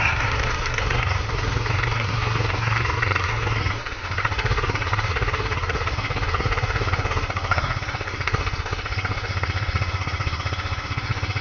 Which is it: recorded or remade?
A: remade